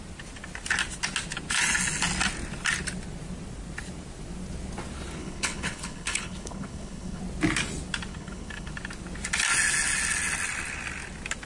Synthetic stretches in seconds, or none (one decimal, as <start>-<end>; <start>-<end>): 5.2-7.2; 8.1-8.7